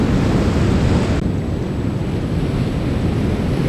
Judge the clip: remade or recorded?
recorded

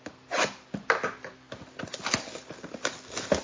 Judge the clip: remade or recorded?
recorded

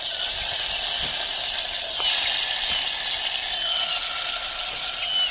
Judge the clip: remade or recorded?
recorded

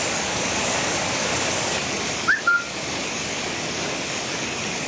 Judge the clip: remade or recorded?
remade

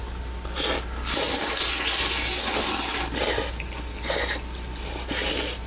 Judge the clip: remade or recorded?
recorded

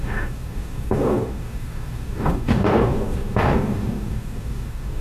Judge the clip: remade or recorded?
remade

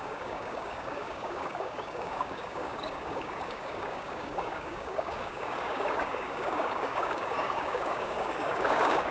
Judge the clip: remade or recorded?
remade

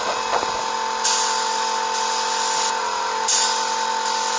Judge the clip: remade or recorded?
recorded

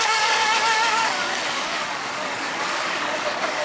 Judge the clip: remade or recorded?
remade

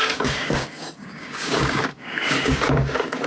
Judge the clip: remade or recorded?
remade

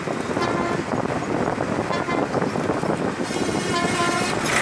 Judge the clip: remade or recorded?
recorded